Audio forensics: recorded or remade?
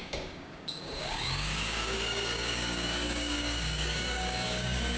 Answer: remade